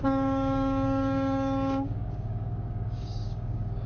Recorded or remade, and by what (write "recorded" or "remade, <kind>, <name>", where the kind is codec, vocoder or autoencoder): remade, codec, DAC